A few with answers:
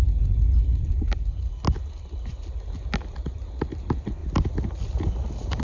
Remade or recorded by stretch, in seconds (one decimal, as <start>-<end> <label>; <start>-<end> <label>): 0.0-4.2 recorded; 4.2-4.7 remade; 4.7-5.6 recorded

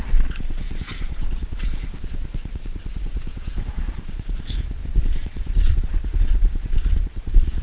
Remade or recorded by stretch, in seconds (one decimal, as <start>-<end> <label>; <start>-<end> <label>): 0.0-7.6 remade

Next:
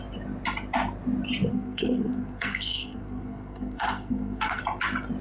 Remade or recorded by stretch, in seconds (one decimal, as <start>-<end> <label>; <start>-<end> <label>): 0.0-1.5 recorded; 1.5-4.6 remade; 4.6-5.2 recorded